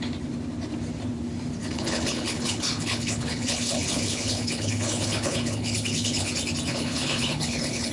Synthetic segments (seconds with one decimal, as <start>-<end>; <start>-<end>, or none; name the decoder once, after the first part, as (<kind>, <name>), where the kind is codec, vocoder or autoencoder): 1.6-6.3 (codec, HILCodec); 6.7-7.9